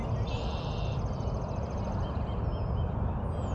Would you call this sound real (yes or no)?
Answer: yes